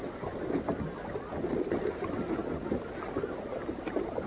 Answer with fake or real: real